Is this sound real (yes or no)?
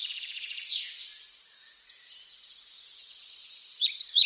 no